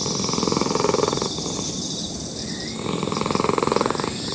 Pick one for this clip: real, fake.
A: real